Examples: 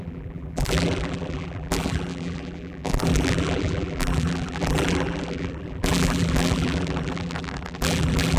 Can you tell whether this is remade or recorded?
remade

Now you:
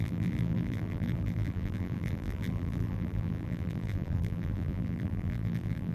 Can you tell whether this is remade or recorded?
remade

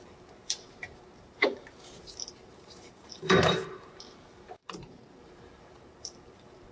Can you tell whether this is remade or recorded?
remade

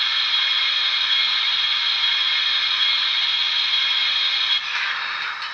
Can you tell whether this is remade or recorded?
recorded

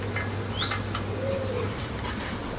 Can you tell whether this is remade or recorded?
recorded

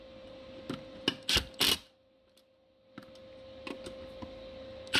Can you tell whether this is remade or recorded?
recorded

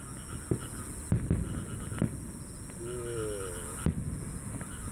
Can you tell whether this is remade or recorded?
recorded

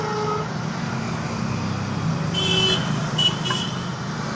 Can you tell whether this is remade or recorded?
recorded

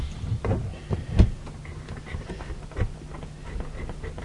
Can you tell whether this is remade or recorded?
recorded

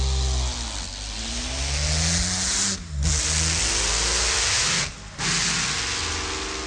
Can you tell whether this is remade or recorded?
recorded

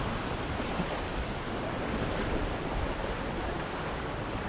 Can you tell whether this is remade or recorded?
recorded